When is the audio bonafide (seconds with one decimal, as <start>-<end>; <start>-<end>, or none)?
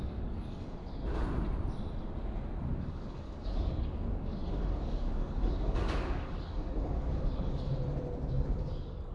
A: 0.8-2.8; 7.7-8.6